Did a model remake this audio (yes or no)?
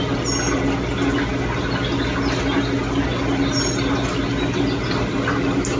no